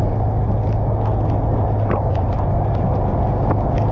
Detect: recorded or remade recorded